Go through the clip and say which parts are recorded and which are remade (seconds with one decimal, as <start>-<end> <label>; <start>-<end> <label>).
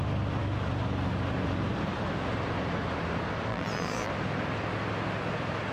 0.0-3.5 recorded; 3.5-4.1 remade; 4.1-5.7 recorded